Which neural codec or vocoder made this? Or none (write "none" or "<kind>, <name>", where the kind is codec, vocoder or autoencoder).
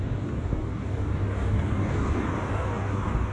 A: codec, DAC